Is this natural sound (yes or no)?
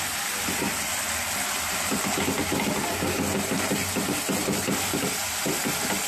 yes